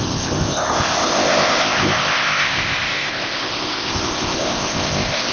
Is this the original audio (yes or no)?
no